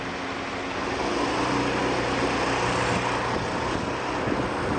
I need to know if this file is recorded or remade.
recorded